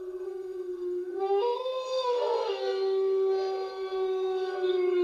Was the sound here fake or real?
fake